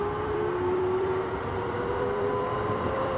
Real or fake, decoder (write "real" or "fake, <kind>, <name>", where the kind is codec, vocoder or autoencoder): fake, vocoder, BigVGAN v2